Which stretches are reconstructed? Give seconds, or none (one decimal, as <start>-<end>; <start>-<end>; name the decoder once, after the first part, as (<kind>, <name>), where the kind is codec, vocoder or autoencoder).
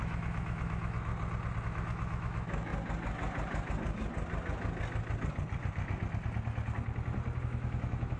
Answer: 0.0-1.1 (autoencoder, DAC-VAE); 1.6-2.7; 7.4-8.2